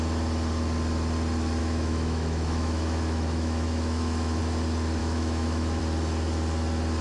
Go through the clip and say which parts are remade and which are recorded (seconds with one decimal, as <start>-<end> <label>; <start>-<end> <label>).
0.0-1.6 recorded; 1.6-4.4 remade; 4.4-5.0 recorded; 5.0-5.8 remade; 5.8-7.0 recorded

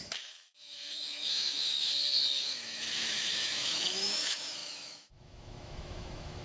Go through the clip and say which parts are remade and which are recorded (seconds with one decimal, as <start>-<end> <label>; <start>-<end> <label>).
0.0-1.9 remade; 1.9-2.4 recorded; 2.4-6.4 remade

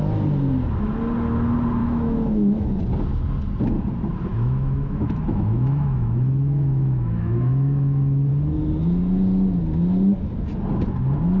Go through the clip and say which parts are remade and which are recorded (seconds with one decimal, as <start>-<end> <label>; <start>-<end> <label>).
0.0-1.8 recorded; 1.8-2.8 remade; 2.8-4.3 recorded; 4.3-8.3 remade; 8.3-11.4 recorded

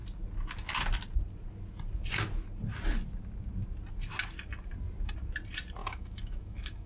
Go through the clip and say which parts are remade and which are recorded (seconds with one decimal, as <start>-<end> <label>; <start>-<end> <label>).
0.0-5.8 recorded; 5.8-6.9 remade

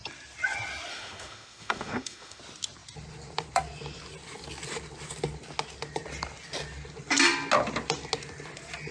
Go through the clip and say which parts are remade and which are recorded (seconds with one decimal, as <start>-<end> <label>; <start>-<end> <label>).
0.0-0.9 recorded; 0.9-2.4 remade; 2.4-8.9 recorded

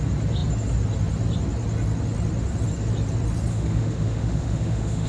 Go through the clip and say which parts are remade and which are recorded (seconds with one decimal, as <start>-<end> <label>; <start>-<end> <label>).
0.0-3.5 recorded; 3.5-5.1 remade

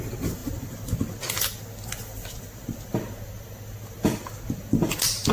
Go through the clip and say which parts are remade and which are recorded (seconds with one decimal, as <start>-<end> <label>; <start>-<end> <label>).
0.0-5.3 recorded

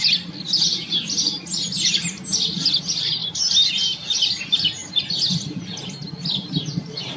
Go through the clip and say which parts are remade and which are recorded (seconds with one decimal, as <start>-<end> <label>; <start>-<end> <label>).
0.0-7.2 recorded